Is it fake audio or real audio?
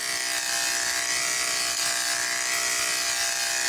real